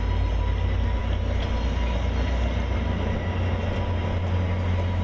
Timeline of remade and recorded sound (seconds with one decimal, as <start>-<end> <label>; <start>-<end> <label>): 0.0-5.0 recorded